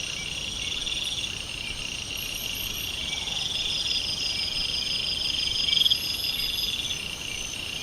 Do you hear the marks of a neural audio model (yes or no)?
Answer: no